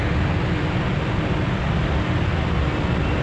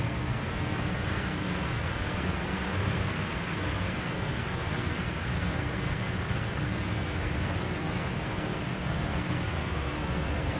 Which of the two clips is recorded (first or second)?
first